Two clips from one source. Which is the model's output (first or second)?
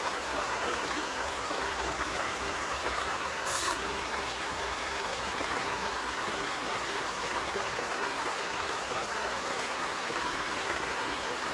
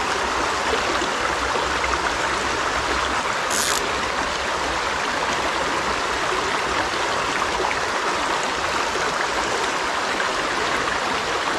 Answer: first